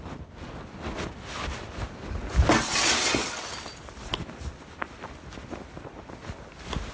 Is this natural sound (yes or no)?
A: yes